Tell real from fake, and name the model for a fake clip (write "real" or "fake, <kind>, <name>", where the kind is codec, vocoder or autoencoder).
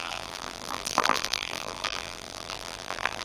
fake, vocoder, BigVGAN v2